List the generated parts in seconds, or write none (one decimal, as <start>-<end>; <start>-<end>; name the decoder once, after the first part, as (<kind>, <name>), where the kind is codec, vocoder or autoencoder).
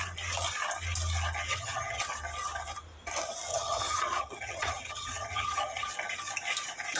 1.5-2.0 (vocoder, HiFi-GAN); 3.5-5.9